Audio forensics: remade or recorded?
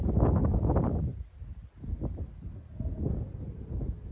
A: recorded